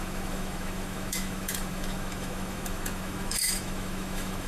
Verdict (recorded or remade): remade